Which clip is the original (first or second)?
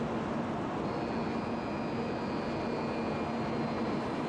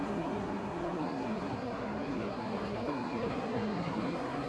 first